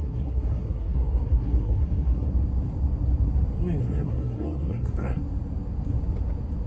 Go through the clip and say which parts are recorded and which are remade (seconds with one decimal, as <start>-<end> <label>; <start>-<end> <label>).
0.0-2.3 remade; 2.3-3.8 recorded; 3.8-5.2 remade; 5.2-6.7 recorded